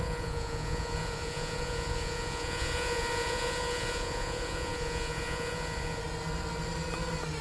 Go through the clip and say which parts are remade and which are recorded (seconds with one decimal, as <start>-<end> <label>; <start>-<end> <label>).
0.0-6.0 remade; 6.0-7.4 recorded